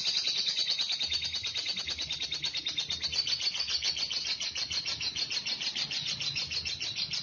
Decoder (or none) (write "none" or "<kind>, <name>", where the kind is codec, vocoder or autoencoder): none